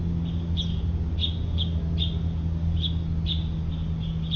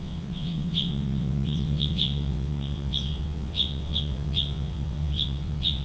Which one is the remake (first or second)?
second